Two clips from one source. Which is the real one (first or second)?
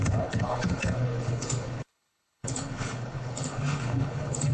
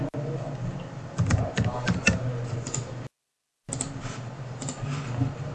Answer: second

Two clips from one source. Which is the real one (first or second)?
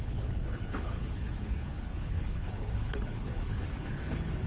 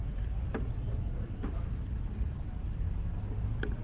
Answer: second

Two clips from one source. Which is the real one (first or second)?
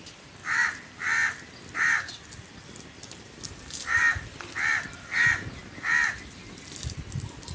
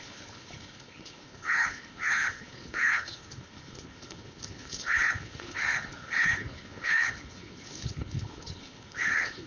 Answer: first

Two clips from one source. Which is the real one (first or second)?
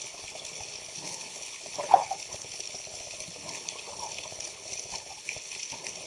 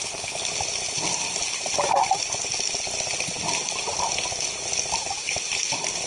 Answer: second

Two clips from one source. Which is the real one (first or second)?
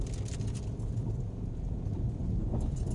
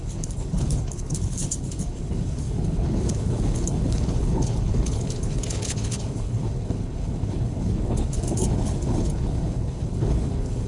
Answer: first